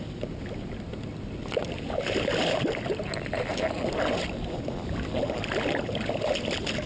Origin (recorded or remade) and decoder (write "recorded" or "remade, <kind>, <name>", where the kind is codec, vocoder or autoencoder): recorded